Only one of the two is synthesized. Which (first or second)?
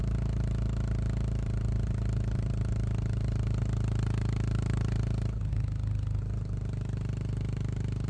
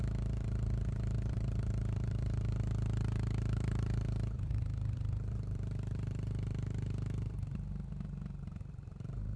second